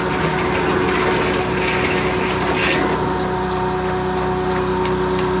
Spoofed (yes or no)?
no